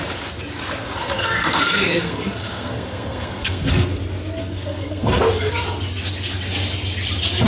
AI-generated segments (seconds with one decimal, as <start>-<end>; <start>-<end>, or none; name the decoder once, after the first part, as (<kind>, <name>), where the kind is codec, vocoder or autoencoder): 0.8-4.0 (codec, SNAC); 4.4-5.2